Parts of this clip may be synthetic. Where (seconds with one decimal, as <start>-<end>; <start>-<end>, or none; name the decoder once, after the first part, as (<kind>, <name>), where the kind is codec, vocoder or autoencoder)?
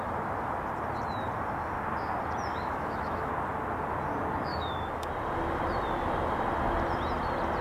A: 2.5-3.3 (autoencoder, DAC-VAE); 4.5-5.1